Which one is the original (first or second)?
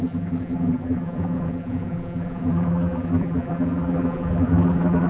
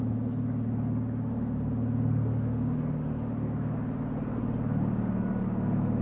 second